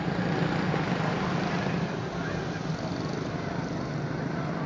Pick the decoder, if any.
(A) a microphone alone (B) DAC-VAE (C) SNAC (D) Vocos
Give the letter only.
A